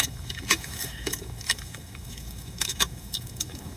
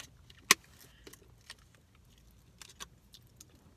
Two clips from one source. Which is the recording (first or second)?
second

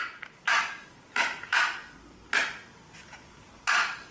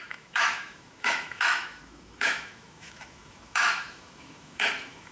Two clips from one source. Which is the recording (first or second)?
first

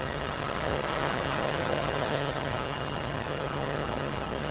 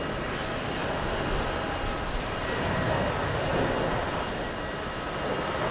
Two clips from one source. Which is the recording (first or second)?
second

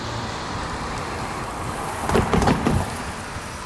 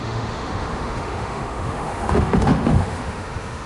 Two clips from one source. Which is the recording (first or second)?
first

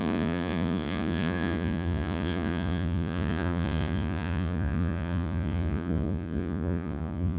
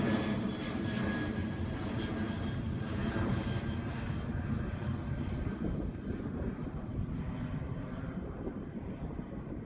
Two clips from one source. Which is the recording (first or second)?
second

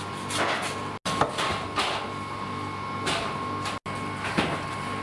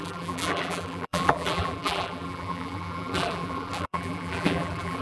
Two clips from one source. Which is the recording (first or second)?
first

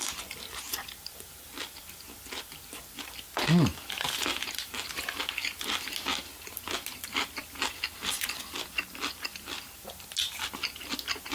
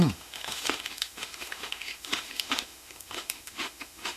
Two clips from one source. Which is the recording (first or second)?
first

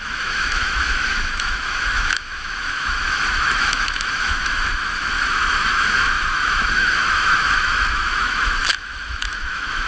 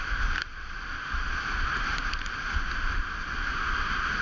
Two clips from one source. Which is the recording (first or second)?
second